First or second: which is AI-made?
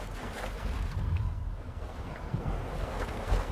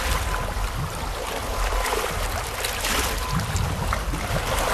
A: first